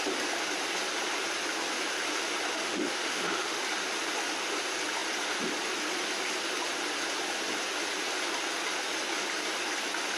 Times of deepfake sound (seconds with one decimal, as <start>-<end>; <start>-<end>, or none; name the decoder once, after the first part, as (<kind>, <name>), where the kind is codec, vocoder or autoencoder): 2.5-3.6 (autoencoder, DAC-VAE)